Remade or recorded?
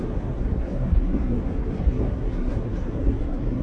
remade